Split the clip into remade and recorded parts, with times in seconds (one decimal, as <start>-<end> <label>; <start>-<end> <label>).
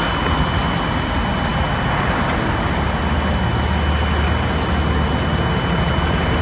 0.0-6.4 recorded